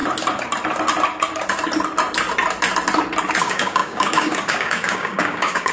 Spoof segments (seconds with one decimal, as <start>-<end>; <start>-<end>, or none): 3.4-5.7